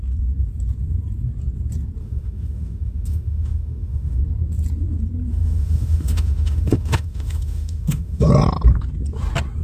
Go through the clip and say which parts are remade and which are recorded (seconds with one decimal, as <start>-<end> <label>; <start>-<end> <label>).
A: 0.0-2.0 recorded; 2.0-4.2 remade; 4.2-5.3 recorded; 5.3-8.3 remade; 8.3-9.6 recorded